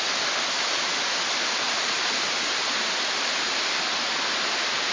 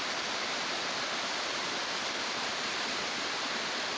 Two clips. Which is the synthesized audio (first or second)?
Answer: second